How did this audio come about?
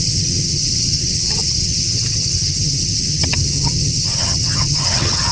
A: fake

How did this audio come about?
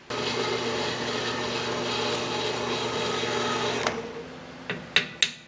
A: real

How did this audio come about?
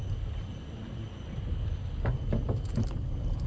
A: real